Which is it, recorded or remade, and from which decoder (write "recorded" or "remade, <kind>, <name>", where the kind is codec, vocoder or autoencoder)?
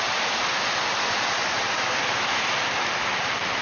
recorded